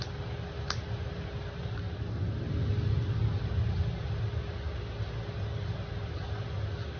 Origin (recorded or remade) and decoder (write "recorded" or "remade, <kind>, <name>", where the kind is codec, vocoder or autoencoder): recorded